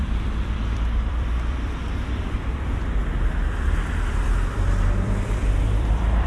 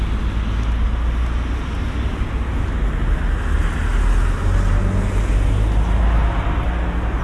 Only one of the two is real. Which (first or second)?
second